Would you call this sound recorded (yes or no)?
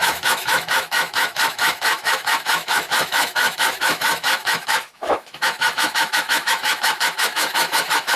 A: no